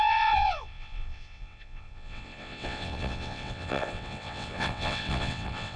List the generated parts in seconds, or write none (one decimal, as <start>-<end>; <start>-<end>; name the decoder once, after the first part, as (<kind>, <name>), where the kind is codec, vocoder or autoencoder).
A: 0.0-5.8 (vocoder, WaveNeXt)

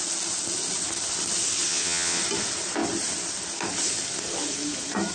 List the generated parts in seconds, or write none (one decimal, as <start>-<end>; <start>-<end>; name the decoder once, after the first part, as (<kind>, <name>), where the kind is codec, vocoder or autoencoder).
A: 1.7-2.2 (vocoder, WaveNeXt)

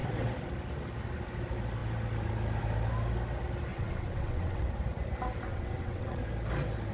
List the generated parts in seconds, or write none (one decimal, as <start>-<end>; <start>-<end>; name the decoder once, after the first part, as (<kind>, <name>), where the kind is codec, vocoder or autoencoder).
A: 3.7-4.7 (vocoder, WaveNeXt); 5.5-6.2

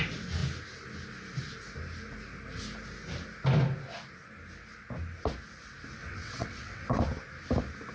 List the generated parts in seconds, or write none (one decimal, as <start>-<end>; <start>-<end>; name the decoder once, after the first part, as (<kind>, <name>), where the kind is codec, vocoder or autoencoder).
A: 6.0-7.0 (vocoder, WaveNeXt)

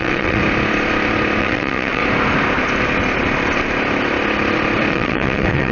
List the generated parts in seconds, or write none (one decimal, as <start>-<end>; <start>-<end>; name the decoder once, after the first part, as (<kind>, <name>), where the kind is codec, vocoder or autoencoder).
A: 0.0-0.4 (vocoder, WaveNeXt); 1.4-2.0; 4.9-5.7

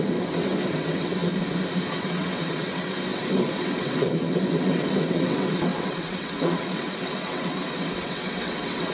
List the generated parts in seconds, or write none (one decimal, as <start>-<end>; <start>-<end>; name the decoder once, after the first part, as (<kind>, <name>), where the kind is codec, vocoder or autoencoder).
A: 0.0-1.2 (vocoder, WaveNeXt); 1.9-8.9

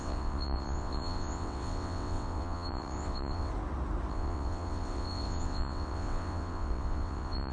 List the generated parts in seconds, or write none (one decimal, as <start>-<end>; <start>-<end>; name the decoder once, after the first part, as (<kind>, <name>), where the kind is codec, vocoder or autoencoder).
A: 0.0-3.5 (vocoder, WaveNeXt); 4.1-7.5

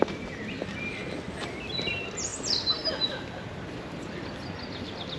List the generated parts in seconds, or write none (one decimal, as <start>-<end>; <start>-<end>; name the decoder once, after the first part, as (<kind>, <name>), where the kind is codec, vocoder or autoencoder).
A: none